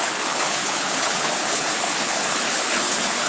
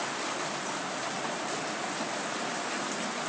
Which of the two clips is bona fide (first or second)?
second